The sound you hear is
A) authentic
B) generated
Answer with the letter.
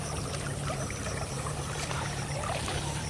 B